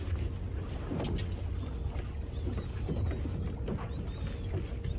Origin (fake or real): real